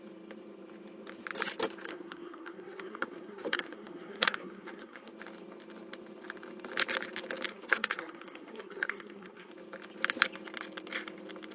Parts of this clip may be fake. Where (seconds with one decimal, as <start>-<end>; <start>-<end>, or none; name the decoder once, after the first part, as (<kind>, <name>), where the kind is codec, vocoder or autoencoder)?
1.9-5.1 (codec, SNAC); 7.5-9.5

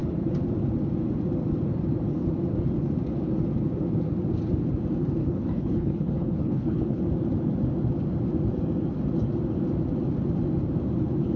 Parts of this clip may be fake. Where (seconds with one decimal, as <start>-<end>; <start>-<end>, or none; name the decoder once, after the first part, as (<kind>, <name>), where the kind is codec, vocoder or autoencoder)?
5.2-7.0 (codec, HILCodec)

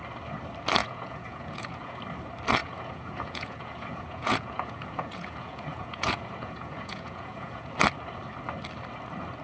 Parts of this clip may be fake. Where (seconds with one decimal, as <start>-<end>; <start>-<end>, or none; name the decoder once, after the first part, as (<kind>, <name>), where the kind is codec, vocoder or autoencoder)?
0.8-2.0 (vocoder, Vocos); 2.6-7.7

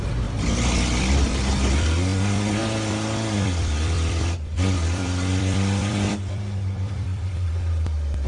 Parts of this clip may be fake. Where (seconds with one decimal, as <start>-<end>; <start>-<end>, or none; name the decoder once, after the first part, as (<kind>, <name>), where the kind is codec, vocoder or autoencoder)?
2.6-7.5 (vocoder, BigVGAN v2)

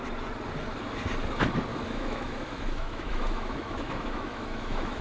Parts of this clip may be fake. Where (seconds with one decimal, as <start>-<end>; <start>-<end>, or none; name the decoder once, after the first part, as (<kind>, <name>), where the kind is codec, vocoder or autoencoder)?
1.7-5.0 (autoencoder, DAC-VAE)

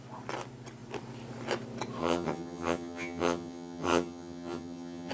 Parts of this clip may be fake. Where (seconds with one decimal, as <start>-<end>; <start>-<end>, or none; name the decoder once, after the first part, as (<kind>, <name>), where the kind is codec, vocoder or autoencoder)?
2.0-5.1 (vocoder, HiFi-GAN)

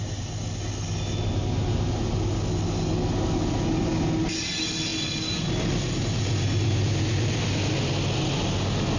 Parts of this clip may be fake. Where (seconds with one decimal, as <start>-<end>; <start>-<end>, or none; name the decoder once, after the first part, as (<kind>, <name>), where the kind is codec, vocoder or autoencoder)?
none

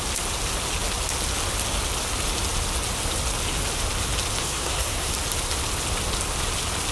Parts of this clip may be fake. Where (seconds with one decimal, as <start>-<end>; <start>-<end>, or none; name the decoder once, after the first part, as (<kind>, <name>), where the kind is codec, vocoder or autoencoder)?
4.4-5.1 (codec, SNAC)